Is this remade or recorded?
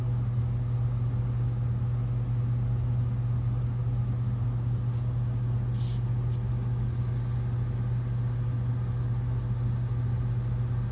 recorded